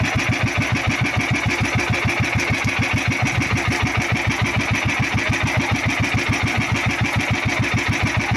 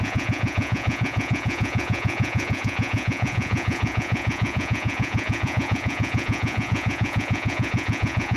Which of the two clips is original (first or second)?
first